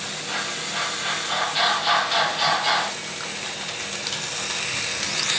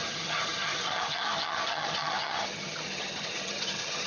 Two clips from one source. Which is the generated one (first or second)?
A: second